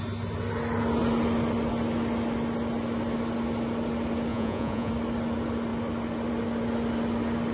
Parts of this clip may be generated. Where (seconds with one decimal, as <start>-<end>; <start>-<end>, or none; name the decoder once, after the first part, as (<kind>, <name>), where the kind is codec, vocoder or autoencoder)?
4.3-4.9 (vocoder, Vocos)